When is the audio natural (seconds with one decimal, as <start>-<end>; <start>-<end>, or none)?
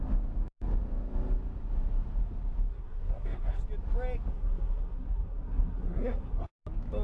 0.0-2.7; 3.6-4.3; 6.5-7.0